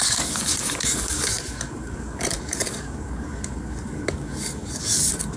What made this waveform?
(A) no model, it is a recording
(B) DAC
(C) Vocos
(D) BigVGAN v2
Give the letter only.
B